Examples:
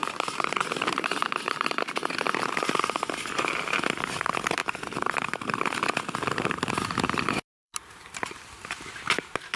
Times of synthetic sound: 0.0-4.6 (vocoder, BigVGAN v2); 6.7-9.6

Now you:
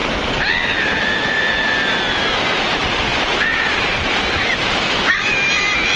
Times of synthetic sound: 3.1-4.2 (vocoder, BigVGAN v2)

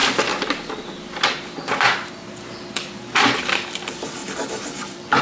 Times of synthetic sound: 4.2-5.2 (vocoder, BigVGAN v2)

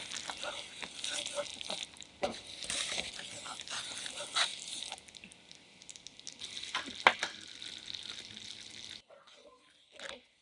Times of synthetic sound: 1.5-3.1 (vocoder, BigVGAN v2); 7.1-7.6

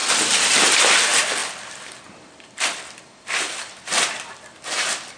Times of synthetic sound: 0.0-0.8 (vocoder, BigVGAN v2); 1.4-4.5

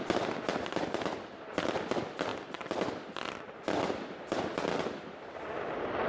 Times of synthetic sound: 2.3-6.1 (vocoder, BigVGAN v2)

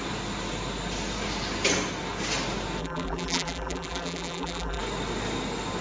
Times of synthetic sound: 2.8-4.8 (vocoder, BigVGAN v2)